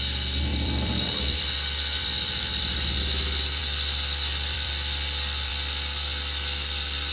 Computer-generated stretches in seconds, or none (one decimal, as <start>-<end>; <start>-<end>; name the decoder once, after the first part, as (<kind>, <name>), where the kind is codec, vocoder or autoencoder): 0.5-3.0 (vocoder, BigVGAN v2); 3.6-5.5